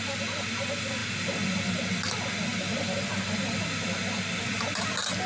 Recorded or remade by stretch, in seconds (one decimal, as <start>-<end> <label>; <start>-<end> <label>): 0.0-5.3 recorded